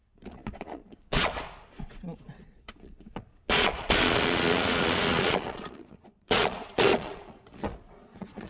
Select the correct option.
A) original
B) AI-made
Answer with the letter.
B